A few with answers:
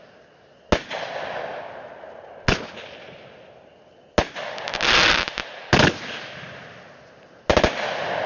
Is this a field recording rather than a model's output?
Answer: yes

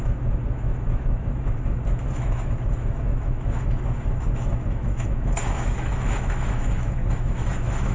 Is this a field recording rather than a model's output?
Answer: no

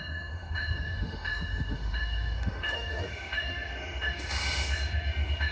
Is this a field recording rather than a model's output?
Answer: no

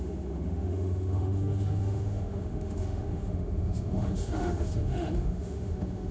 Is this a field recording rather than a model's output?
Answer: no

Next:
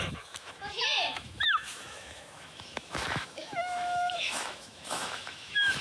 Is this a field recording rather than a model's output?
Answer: no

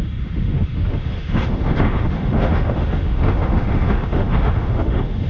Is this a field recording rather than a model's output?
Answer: no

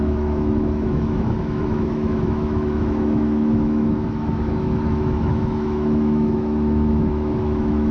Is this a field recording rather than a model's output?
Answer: no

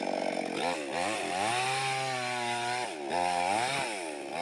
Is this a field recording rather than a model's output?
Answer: yes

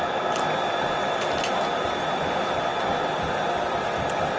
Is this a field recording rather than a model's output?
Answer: yes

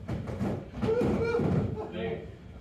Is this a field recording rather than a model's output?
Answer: yes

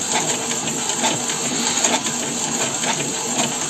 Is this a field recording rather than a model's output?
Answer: yes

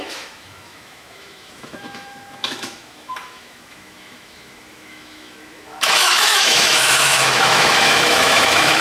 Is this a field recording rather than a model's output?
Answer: no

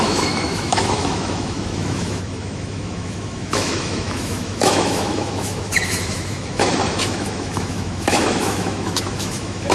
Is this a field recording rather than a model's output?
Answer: no